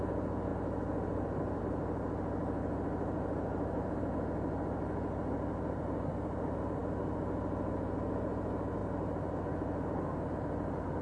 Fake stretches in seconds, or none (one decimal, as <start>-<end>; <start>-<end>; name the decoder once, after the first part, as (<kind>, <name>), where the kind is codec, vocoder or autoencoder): none